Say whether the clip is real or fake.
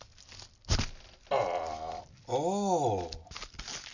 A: real